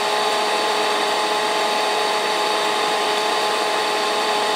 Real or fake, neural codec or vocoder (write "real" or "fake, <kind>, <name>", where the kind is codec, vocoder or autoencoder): fake, vocoder, BigVGAN v2